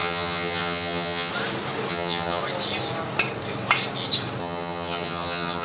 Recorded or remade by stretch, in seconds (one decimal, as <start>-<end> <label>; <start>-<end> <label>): 0.0-1.3 remade; 1.3-1.9 recorded; 1.9-2.4 remade; 2.4-4.4 recorded; 4.4-5.6 remade